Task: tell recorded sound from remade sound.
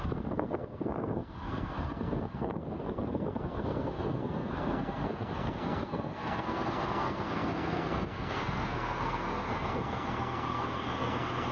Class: remade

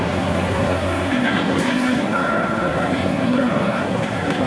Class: remade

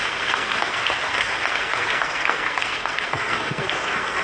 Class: remade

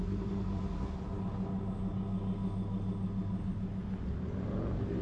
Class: recorded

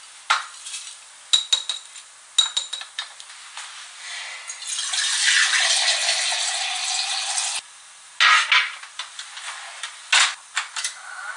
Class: recorded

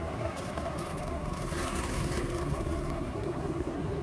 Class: remade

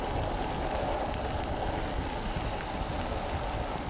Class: recorded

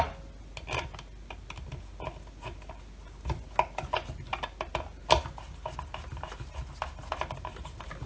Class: recorded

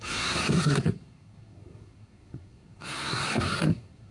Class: remade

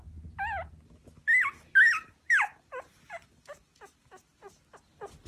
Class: recorded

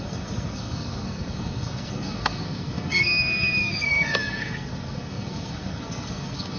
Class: remade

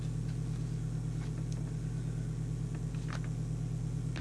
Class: recorded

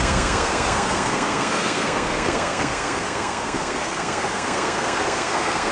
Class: remade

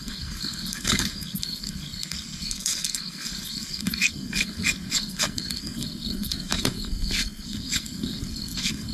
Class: remade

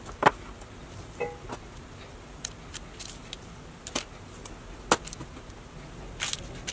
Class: recorded